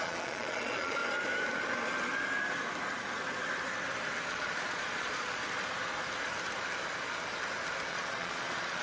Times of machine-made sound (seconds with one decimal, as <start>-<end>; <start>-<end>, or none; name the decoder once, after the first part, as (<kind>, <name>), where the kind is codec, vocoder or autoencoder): 0.0-1.0 (vocoder, Vocos); 4.3-5.4; 7.9-8.8